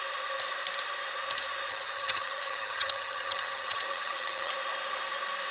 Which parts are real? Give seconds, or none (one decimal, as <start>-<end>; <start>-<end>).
0.0-1.7; 4.5-5.5